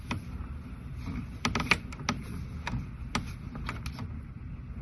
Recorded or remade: recorded